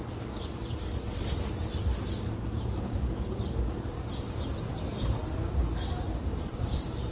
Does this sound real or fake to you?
real